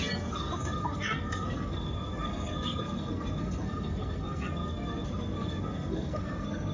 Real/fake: fake